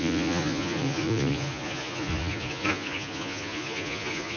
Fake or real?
fake